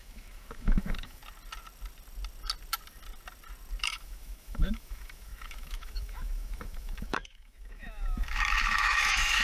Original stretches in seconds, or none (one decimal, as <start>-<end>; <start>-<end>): 1.2-3.8

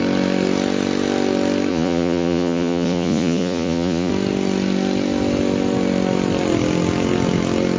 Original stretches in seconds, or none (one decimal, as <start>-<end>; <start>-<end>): 0.0-1.7; 4.1-7.8

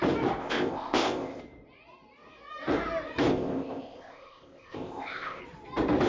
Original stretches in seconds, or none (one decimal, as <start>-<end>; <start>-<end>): 0.0-0.4; 1.4-3.3; 5.4-6.1

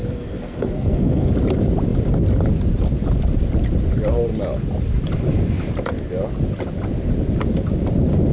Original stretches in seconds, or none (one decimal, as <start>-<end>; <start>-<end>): 1.3-8.3